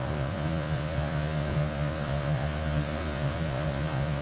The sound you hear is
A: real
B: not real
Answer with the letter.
B